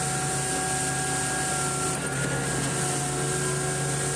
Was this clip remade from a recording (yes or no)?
no